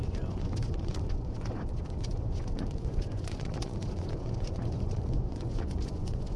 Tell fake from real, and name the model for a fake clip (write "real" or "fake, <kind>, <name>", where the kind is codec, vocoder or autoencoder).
fake, vocoder, Vocos